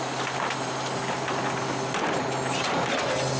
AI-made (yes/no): no